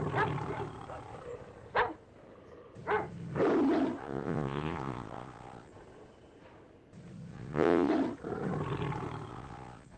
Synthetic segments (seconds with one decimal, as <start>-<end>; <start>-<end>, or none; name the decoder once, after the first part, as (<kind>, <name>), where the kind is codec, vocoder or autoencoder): 4.0-5.7 (vocoder, Vocos); 7.3-7.9; 9.3-10.0